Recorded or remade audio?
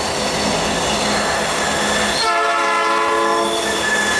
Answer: recorded